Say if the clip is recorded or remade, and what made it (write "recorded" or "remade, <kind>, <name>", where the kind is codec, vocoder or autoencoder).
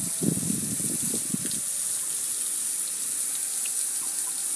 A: recorded